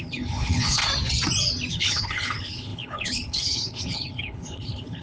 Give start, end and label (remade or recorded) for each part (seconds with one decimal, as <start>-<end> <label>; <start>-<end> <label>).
0.0-0.8 remade; 0.8-1.7 recorded; 1.7-5.0 remade